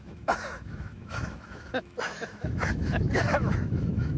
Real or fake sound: fake